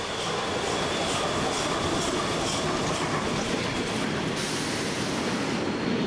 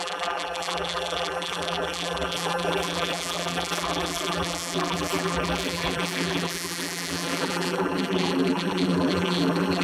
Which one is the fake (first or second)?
second